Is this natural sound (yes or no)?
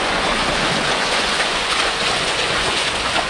no